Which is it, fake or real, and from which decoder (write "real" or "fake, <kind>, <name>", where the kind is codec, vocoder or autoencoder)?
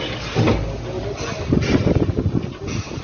real